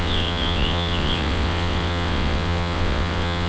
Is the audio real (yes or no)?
no